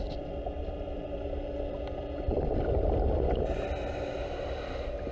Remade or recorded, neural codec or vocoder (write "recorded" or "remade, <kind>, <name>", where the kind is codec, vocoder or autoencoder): recorded